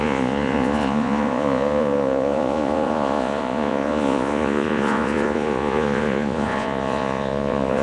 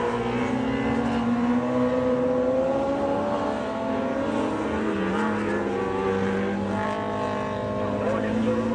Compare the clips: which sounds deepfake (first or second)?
first